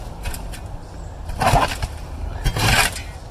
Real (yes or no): yes